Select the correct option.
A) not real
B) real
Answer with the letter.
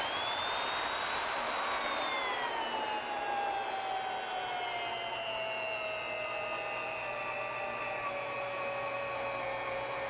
B